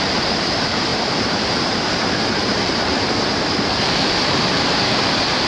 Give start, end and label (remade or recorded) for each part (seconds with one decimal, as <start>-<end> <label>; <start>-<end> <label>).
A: 0.0-5.5 remade